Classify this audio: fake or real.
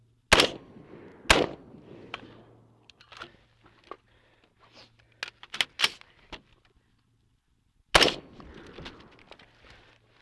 real